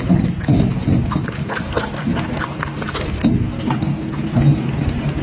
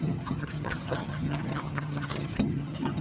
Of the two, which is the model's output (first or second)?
second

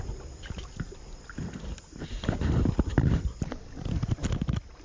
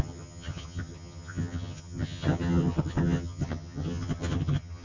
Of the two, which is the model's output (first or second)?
second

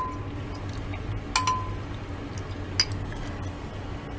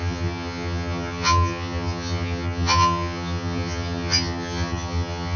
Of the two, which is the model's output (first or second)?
second